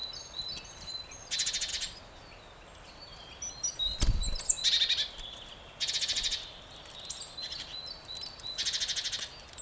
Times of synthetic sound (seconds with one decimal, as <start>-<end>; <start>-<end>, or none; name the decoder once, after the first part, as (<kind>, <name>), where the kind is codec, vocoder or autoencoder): none